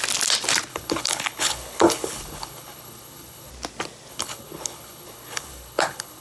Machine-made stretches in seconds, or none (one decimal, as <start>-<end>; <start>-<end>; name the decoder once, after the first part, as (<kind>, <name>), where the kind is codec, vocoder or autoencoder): 0.7-3.5 (codec, HILCodec); 4.1-6.2